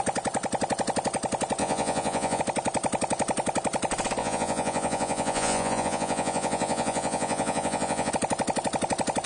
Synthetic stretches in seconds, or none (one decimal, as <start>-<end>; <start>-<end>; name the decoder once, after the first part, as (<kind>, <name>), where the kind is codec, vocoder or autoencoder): 1.6-2.4 (vocoder, Vocos); 4.2-8.1